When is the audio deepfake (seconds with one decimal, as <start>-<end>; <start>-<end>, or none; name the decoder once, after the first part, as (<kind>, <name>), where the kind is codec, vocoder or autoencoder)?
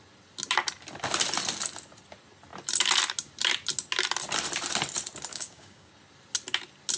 5.3-5.9 (codec, DAC)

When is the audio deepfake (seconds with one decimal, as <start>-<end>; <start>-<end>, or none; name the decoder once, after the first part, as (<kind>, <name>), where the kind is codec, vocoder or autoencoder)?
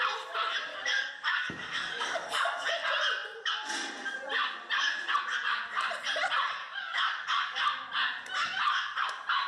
0.7-2.7 (codec, DAC); 6.6-7.6